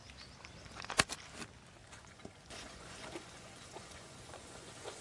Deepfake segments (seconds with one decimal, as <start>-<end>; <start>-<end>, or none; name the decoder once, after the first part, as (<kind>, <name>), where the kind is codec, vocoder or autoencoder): 1.8-5.0 (vocoder, Vocos)